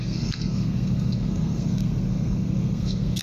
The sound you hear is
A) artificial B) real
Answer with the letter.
A